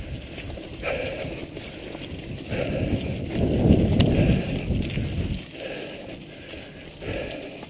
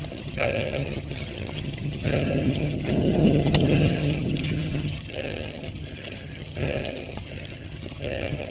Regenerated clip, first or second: second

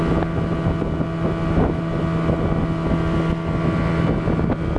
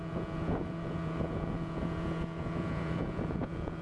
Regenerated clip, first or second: second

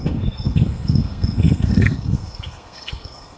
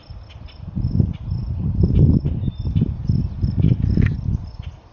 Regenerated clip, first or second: first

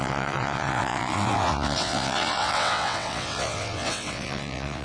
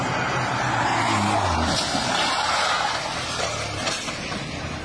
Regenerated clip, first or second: first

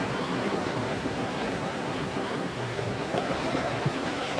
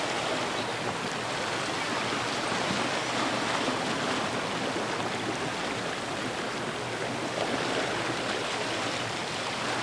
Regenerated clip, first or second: first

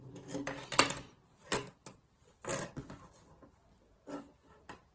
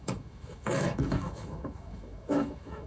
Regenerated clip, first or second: second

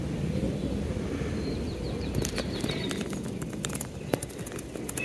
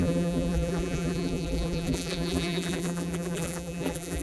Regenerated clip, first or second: second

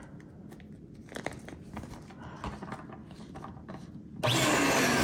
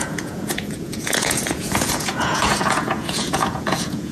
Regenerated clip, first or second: second